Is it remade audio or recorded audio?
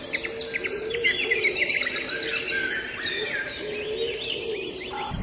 remade